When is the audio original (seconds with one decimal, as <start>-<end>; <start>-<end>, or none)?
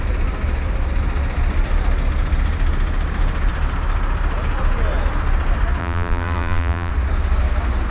0.0-5.8; 6.9-7.9